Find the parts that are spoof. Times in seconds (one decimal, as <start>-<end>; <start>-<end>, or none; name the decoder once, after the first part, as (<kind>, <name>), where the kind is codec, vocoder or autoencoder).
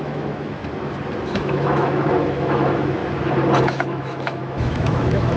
0.0-0.6 (autoencoder, DAC-VAE); 1.3-3.0; 3.6-5.4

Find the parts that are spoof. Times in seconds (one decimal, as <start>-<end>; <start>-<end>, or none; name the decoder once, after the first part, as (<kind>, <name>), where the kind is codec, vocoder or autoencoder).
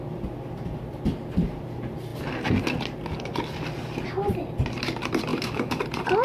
5.3-5.8 (autoencoder, DAC-VAE)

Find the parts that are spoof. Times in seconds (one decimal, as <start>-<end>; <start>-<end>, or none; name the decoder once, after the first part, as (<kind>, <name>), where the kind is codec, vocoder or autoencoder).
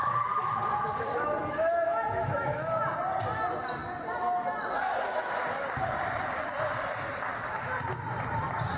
0.0-2.8 (autoencoder, DAC-VAE)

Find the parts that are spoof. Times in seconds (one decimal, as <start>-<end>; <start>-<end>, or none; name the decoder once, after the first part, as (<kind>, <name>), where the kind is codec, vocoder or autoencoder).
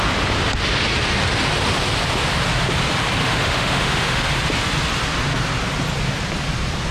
3.2-4.3 (autoencoder, DAC-VAE)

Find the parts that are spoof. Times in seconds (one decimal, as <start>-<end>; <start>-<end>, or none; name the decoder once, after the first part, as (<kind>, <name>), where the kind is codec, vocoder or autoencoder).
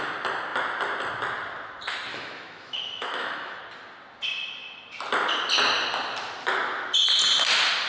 2.1-3.6 (autoencoder, DAC-VAE)